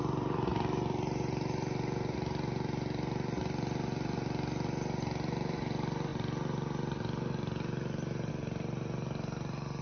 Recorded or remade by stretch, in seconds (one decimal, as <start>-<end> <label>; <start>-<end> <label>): 0.0-9.8 remade